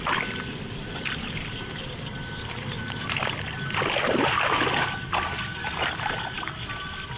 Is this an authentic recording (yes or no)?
yes